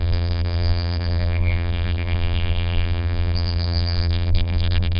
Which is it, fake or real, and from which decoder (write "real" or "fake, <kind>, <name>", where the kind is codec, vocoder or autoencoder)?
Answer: fake, vocoder, BigVGAN v2